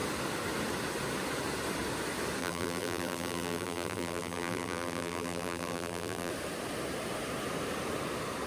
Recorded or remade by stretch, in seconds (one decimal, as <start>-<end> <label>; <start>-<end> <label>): 0.0-2.4 recorded; 2.4-6.3 remade; 6.3-8.5 recorded